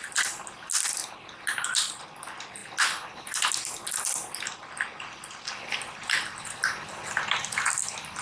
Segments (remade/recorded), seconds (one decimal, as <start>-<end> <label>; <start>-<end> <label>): 0.0-8.2 recorded